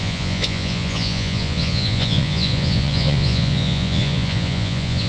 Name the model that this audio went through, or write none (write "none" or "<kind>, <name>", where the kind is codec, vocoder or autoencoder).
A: vocoder, Vocos